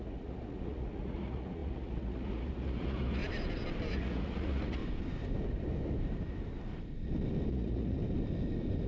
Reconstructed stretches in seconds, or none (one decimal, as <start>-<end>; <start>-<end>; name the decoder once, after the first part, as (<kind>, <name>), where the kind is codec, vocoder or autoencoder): 0.0-3.2 (vocoder, Vocos); 3.9-4.8; 7.5-8.0